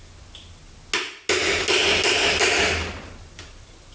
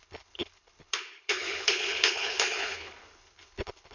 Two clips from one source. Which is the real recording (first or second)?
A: first